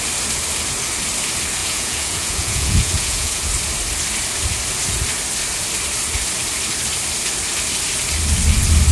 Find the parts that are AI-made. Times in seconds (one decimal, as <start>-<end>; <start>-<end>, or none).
1.6-3.5